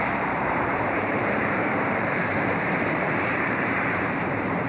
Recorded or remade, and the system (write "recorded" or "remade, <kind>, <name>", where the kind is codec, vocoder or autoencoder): remade, vocoder, BigVGAN v2